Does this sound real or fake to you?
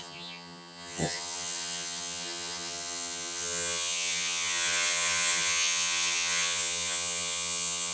fake